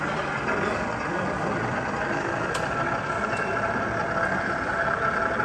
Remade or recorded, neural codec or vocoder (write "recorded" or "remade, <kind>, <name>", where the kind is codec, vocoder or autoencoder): recorded